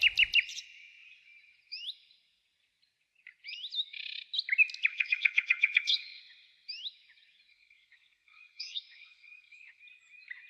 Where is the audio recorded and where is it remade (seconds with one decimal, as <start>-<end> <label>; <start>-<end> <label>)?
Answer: 0.0-4.9 recorded; 4.9-6.2 remade; 6.2-7.5 recorded; 7.5-9.8 remade; 9.8-10.5 recorded